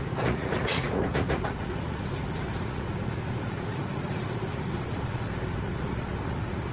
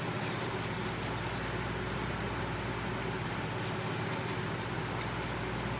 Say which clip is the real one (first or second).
second